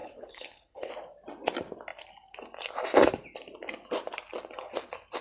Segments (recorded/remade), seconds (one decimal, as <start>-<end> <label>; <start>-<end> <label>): 0.0-0.9 remade; 0.9-5.2 recorded